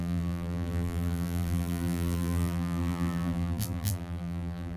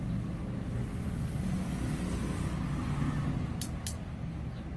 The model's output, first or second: first